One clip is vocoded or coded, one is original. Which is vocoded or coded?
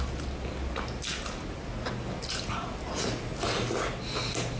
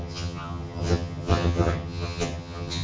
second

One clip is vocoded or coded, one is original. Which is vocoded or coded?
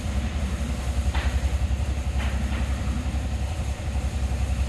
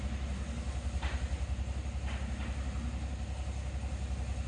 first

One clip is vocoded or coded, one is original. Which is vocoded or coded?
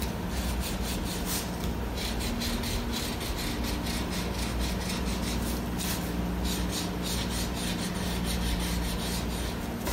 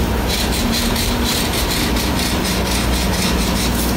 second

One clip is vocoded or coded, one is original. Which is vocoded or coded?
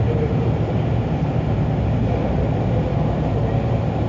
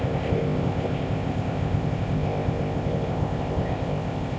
second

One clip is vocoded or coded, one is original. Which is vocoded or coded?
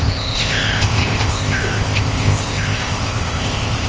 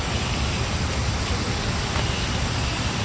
first